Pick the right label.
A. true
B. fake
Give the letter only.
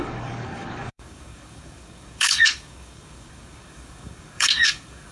B